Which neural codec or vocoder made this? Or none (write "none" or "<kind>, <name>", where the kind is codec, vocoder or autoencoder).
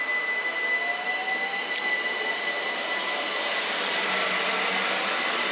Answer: none